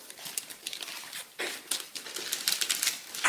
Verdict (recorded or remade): recorded